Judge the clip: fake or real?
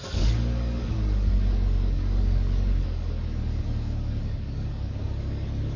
fake